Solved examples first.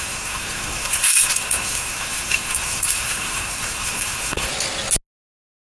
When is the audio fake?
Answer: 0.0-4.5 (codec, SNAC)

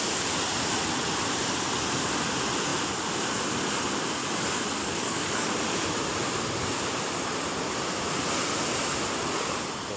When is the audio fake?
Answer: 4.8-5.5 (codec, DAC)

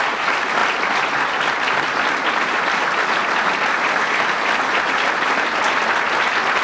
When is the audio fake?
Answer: none

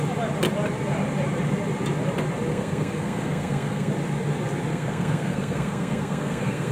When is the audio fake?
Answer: 2.5-3.9 (codec, SNAC); 4.7-6.7

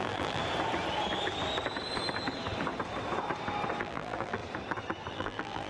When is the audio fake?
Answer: 0.0-0.4 (vocoder, BigVGAN v2); 3.8-4.4; 5.1-5.7